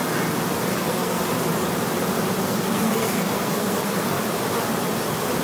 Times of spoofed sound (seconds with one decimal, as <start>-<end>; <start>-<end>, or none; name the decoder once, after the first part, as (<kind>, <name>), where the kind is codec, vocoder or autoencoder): 0.7-1.2 (codec, SNAC); 2.4-4.2